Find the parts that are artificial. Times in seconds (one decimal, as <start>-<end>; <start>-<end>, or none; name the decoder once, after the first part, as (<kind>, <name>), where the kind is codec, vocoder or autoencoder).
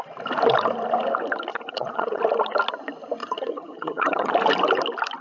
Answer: 1.5-2.2 (vocoder, HiFi-GAN); 3.2-4.3